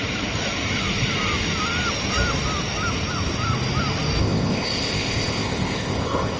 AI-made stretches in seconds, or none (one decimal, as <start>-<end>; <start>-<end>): 4.2-6.4